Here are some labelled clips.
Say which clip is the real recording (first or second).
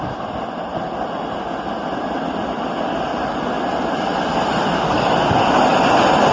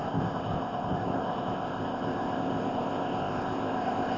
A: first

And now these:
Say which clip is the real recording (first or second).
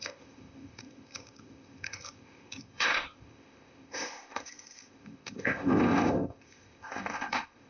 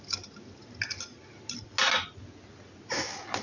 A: second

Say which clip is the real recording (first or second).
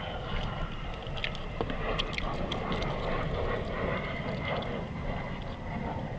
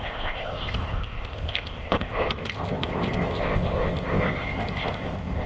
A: first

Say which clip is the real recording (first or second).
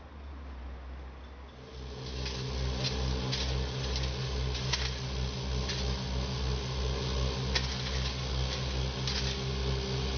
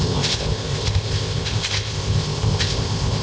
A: first